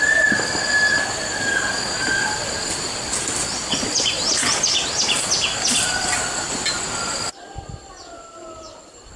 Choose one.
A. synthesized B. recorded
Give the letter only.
B